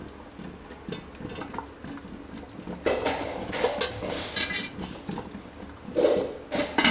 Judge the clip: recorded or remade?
recorded